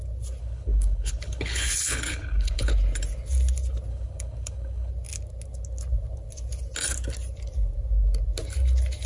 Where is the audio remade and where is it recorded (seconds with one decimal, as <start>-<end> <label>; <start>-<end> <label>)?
0.0-0.4 recorded; 0.4-2.7 remade; 2.7-3.9 recorded; 3.9-4.9 remade; 4.9-9.1 recorded